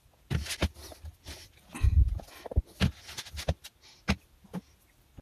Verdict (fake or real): real